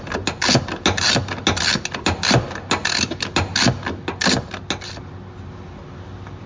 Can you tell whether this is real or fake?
real